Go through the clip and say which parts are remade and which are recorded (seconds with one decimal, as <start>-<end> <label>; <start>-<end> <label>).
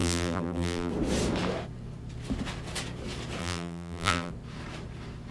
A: 0.0-0.9 remade; 0.9-3.4 recorded; 3.4-4.3 remade; 4.3-5.3 recorded